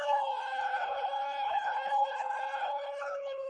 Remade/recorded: remade